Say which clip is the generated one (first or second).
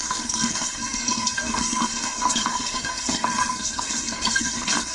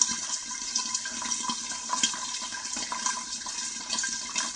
first